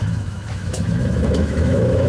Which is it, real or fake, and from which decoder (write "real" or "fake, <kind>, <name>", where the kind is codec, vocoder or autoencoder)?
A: fake, autoencoder, DAC-VAE